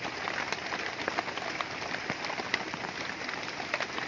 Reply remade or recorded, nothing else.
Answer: recorded